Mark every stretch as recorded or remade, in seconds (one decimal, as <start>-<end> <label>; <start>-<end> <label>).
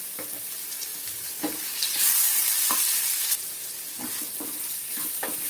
0.0-5.5 recorded